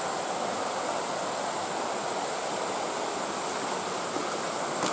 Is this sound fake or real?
real